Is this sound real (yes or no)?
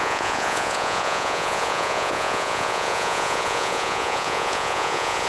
no